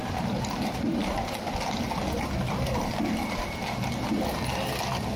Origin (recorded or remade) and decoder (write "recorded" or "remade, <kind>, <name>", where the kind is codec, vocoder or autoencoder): recorded